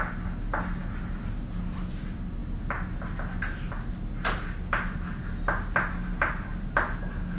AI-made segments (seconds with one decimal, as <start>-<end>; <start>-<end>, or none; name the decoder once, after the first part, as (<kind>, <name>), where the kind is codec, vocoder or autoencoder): none